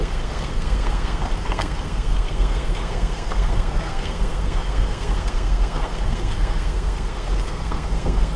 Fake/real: fake